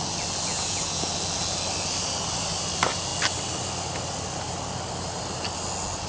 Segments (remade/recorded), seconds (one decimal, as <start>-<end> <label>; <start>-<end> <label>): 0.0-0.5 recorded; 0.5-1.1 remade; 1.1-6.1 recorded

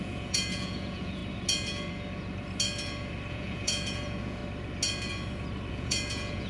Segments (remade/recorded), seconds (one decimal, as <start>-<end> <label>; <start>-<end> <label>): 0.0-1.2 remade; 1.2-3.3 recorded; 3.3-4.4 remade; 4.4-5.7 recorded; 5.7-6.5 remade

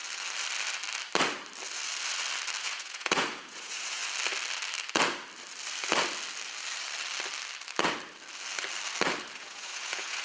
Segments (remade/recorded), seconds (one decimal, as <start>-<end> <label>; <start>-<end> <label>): 0.0-2.6 recorded; 2.6-4.0 remade; 4.0-9.3 recorded; 9.3-10.2 remade

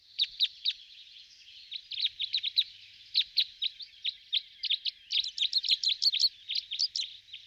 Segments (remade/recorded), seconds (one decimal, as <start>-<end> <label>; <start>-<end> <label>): 0.0-7.5 recorded

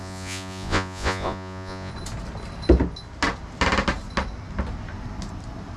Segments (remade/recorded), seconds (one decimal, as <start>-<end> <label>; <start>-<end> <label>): 0.0-1.9 remade; 1.9-5.8 recorded

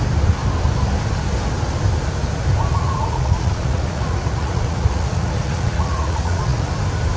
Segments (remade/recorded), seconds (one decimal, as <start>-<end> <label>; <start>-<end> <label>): 0.0-2.7 recorded; 2.7-6.7 remade; 6.7-7.2 recorded

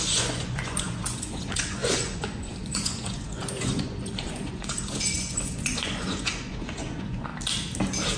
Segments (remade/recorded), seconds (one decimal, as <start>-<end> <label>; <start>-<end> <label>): 0.0-7.3 remade; 7.3-8.2 recorded